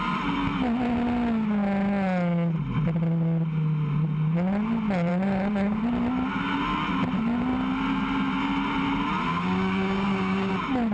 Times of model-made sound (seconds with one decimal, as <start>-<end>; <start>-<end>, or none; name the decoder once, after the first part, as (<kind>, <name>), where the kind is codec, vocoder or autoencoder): 5.1-5.8 (codec, DAC); 9.3-10.5